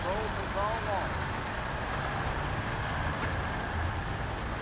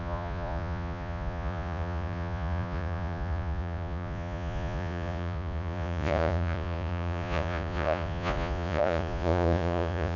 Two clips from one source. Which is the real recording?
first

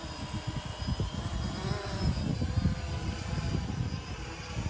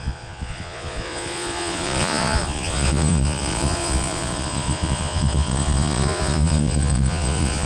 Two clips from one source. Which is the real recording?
first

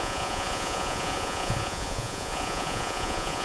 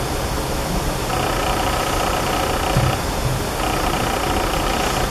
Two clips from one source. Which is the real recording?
second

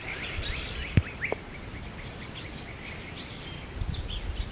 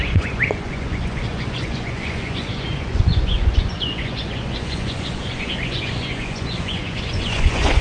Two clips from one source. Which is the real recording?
first